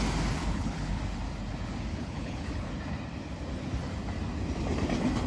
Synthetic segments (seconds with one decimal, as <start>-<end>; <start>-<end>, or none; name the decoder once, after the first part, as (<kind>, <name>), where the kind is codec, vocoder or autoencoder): 0.4-1.0 (codec, HILCodec); 1.9-2.7